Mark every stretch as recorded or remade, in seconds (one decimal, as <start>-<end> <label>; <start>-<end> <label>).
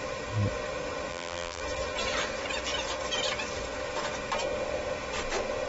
0.0-1.1 recorded; 1.1-1.6 remade; 1.6-5.7 recorded